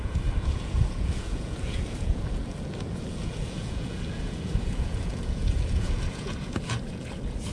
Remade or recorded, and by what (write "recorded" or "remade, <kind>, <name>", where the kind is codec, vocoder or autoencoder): remade, vocoder, Vocos